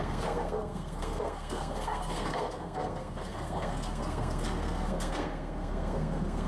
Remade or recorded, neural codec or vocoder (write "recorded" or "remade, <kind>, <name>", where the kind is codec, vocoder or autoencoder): remade, codec, SNAC